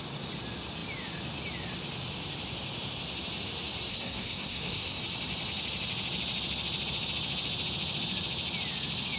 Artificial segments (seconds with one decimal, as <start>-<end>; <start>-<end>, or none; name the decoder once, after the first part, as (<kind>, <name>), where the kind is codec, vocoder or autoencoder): 3.9-5.0 (codec, SNAC)